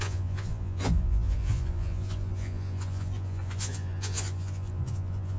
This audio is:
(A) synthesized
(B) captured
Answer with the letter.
A